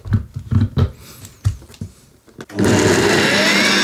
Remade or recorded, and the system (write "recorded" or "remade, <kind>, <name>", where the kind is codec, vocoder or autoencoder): recorded